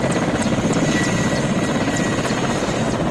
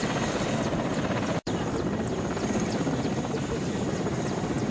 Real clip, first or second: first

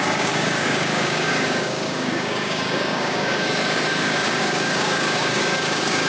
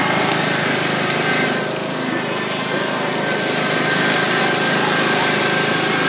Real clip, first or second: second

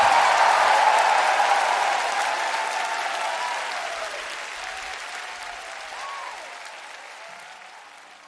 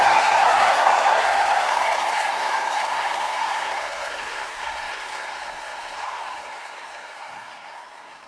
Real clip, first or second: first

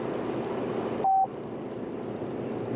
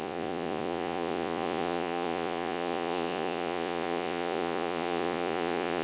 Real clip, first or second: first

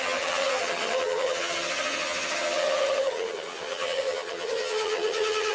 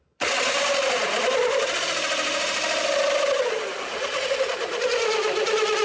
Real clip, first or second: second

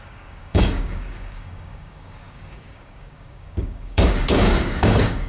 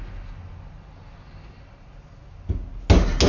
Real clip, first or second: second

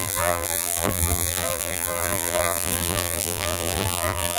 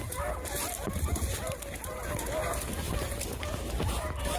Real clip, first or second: second